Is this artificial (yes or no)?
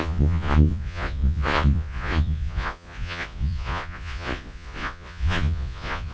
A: yes